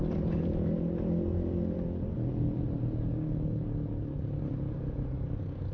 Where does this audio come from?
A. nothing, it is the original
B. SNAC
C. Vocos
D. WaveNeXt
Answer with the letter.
A